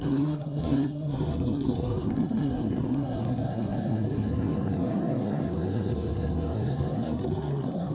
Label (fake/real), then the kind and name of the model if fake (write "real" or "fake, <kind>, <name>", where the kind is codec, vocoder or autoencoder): fake, codec, SNAC